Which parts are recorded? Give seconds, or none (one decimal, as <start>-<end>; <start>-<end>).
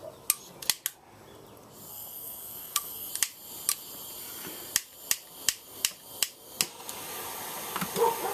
0.0-1.9; 3.1-8.3